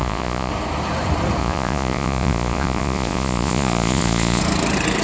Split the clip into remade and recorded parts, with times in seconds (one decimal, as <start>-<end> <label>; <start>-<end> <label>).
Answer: 0.0-0.5 remade; 0.5-1.4 recorded; 1.4-4.4 remade; 4.4-5.0 recorded